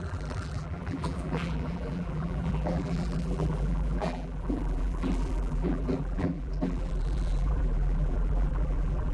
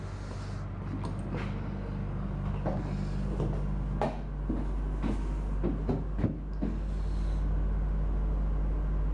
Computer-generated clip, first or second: first